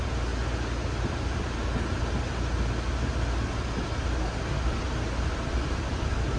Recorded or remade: recorded